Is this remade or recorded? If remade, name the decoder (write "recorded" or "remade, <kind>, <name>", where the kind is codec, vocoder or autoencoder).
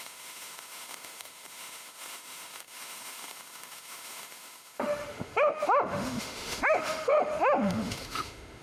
remade, autoencoder, DAC-VAE